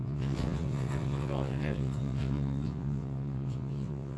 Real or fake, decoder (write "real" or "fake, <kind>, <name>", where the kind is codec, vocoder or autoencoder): fake, vocoder, WaveNeXt